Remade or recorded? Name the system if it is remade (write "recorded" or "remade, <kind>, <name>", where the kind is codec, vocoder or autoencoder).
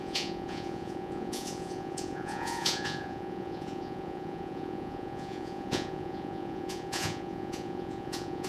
remade, vocoder, Vocos